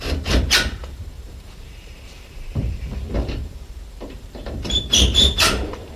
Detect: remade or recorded remade